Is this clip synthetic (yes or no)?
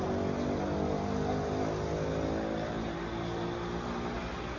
no